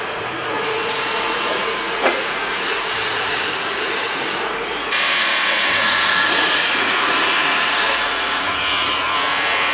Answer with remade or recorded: remade